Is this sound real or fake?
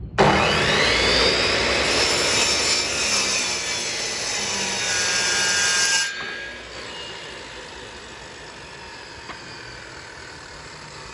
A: real